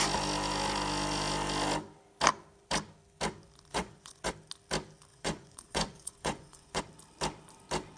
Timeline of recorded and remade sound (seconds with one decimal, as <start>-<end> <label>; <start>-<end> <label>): 0.0-3.7 recorded; 3.7-4.3 remade; 4.3-5.1 recorded; 5.1-6.8 remade; 6.8-8.0 recorded